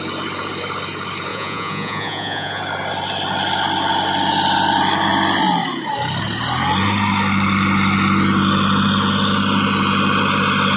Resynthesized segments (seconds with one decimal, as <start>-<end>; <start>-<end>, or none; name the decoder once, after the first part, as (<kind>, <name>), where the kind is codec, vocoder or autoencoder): 1.3-2.6 (vocoder, Vocos)